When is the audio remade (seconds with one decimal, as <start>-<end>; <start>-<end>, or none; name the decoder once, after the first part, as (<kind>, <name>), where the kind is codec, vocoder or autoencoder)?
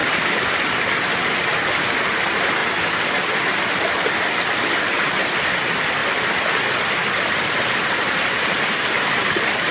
0.0-0.6 (vocoder, BigVGAN v2); 6.0-9.7